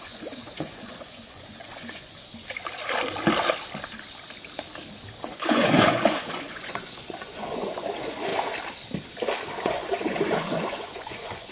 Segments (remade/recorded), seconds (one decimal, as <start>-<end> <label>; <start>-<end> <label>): 0.0-2.3 remade; 2.3-5.2 recorded; 5.2-8.3 remade; 8.3-9.6 recorded; 9.6-11.5 remade